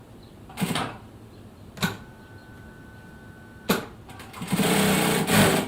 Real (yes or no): yes